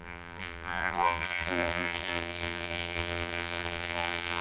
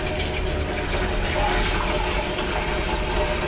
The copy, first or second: first